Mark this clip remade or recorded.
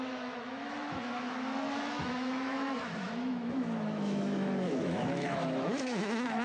remade